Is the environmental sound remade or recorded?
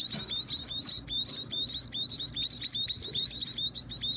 recorded